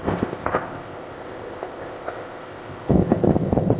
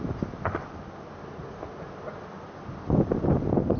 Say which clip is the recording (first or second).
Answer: second